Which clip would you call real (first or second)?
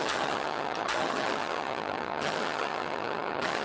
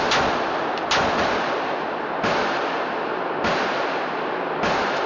second